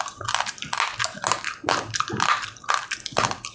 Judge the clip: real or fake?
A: real